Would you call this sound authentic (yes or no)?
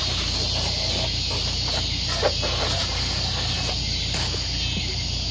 yes